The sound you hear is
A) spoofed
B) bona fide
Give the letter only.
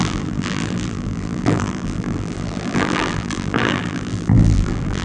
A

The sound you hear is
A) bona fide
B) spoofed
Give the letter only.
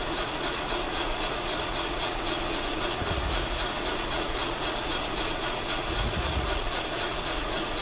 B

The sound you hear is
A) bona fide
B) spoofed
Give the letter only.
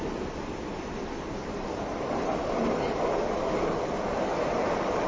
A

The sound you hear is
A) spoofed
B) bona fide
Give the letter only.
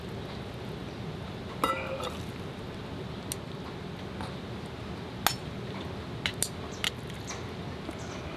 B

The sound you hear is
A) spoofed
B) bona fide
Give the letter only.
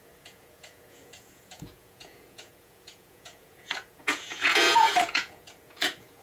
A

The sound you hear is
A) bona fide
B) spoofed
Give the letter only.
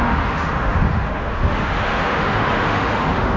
B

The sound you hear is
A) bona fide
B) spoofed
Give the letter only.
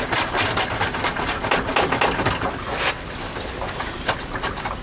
A